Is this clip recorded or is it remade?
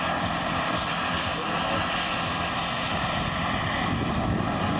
recorded